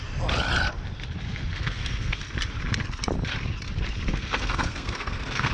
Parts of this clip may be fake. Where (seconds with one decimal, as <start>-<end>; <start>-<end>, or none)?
1.5-2.2; 4.1-5.5